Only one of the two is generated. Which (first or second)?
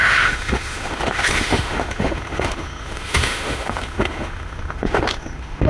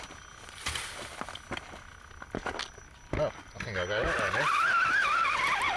first